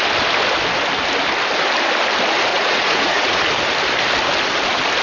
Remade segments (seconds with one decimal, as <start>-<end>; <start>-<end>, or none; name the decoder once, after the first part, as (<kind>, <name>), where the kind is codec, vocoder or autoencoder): 2.5-3.4 (vocoder, Vocos)